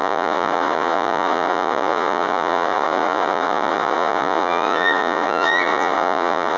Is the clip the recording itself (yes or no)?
no